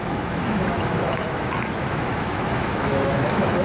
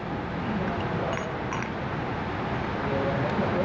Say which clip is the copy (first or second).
first